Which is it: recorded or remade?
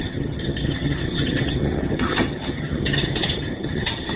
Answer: remade